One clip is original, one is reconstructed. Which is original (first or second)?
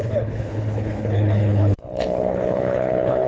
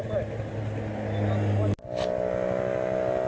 second